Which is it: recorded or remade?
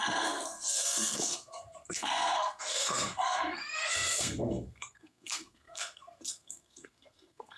remade